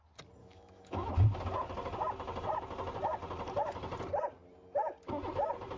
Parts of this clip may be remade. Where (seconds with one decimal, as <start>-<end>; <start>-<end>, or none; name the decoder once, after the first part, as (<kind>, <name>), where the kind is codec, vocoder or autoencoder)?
0.4-1.1 (autoencoder, DAC-VAE)